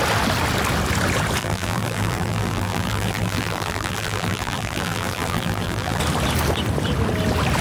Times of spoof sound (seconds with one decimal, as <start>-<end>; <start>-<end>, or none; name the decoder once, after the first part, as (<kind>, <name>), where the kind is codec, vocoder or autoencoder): 1.4-6.0 (vocoder, BigVGAN v2)